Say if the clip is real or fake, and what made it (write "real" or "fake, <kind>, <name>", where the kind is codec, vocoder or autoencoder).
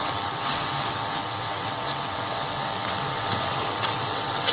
fake, vocoder, WaveNeXt